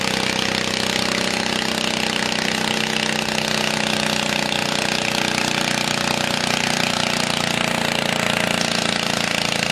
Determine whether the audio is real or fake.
real